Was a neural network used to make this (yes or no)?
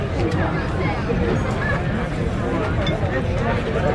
no